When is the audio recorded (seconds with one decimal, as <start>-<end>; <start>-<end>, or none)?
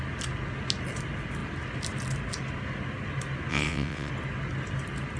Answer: 0.0-3.5; 4.1-5.2